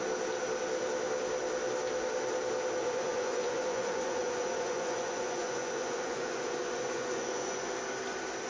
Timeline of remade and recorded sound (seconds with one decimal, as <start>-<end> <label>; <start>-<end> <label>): 0.0-2.8 recorded; 2.8-7.7 remade; 7.7-8.5 recorded